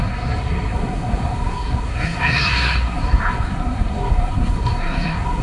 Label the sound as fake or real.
fake